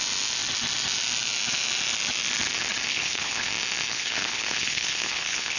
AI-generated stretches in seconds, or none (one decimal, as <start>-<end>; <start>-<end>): 2.9-3.5; 3.9-5.6